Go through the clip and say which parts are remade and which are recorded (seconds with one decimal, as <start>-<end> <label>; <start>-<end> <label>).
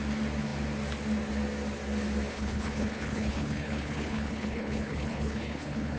0.0-2.3 recorded; 2.3-6.0 remade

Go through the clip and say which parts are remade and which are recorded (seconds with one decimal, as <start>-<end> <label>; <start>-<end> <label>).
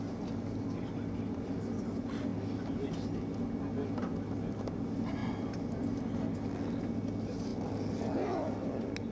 0.0-9.1 recorded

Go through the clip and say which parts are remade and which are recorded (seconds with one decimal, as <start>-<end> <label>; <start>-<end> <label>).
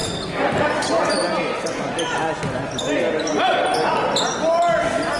0.0-5.2 recorded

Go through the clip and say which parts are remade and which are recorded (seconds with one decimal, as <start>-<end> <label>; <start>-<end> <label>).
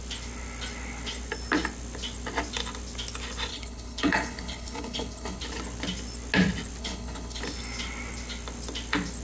0.0-3.5 recorded; 3.5-5.4 remade; 5.4-6.8 recorded; 6.8-7.4 remade; 7.4-9.2 recorded